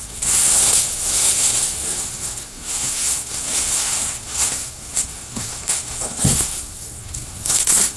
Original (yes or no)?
no